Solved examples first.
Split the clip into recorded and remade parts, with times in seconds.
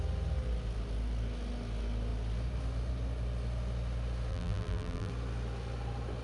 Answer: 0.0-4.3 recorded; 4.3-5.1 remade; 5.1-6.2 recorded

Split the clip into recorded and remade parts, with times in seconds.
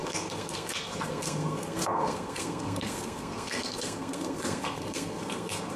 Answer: 0.0-5.8 remade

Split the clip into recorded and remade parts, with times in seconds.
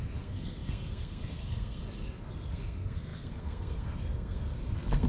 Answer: 0.0-5.1 remade